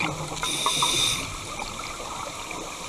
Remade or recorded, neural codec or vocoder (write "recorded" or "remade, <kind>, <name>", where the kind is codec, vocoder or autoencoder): recorded